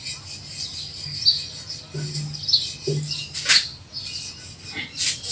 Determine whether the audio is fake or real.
real